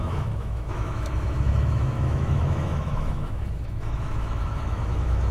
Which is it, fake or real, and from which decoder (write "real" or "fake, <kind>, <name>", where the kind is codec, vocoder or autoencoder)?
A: fake, autoencoder, DAC-VAE